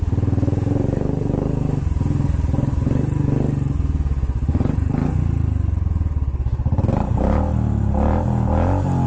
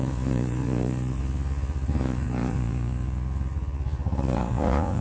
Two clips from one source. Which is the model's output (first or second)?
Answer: second